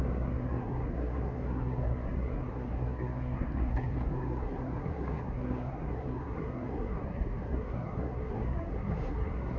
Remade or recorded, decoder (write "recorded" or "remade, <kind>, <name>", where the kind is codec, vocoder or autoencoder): remade, codec, SNAC